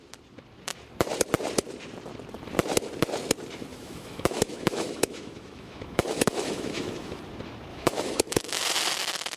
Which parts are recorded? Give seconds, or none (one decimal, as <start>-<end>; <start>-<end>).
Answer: 0.0-3.7; 7.2-7.7; 8.6-9.4